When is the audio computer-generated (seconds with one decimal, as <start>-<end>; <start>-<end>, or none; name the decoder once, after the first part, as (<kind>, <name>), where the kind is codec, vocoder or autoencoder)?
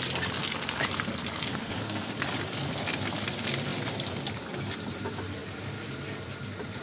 1.5-2.1 (codec, SNAC)